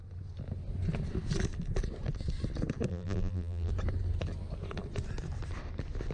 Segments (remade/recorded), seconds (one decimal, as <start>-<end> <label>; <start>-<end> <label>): 0.0-2.9 recorded; 2.9-3.7 remade; 3.7-6.1 recorded